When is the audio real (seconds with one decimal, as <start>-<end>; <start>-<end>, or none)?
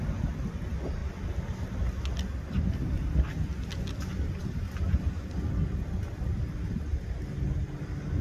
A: 0.0-8.2